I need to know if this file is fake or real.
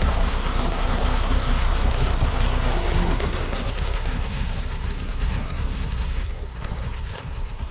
fake